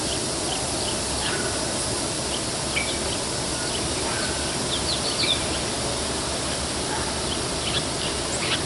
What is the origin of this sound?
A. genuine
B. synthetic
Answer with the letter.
A